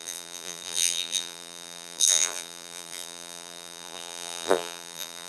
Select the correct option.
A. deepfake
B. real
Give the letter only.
A